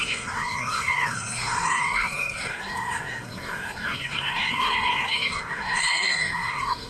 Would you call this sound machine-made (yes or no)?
yes